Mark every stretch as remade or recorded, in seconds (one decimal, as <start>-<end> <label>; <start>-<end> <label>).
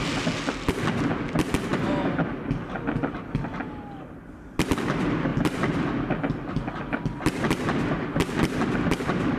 0.0-9.4 recorded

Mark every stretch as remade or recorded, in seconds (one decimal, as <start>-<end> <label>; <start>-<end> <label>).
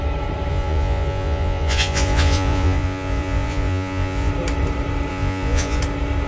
0.0-0.5 recorded; 0.5-4.3 remade; 4.3-5.1 recorded; 5.1-5.8 remade; 5.8-6.3 recorded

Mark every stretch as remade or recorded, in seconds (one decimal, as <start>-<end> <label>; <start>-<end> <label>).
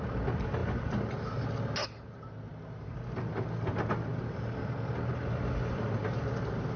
0.0-6.8 recorded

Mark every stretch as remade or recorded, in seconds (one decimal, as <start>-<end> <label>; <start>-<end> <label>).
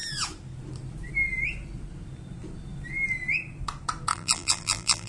0.0-4.1 recorded; 4.1-5.1 remade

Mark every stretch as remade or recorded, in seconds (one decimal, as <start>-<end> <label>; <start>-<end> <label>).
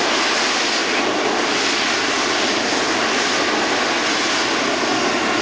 0.0-5.4 recorded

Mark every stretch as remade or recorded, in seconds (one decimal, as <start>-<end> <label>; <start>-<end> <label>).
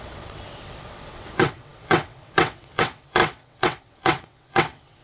0.0-5.0 remade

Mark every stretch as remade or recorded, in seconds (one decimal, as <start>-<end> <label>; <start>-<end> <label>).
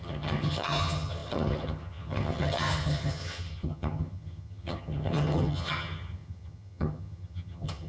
0.0-7.9 remade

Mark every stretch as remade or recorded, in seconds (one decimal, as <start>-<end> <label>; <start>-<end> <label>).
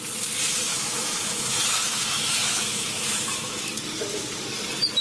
0.0-0.7 recorded; 0.7-3.7 remade; 3.7-5.0 recorded